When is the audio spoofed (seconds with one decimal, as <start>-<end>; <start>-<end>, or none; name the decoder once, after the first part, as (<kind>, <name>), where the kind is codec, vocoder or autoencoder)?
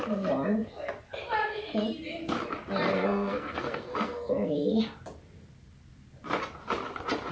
2.9-4.8 (codec, SNAC)